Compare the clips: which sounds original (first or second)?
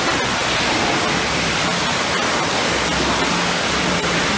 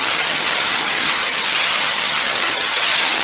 first